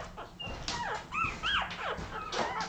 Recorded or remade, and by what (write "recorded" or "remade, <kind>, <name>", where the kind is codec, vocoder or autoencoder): recorded